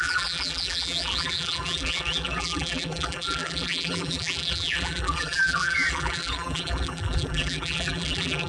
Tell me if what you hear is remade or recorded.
remade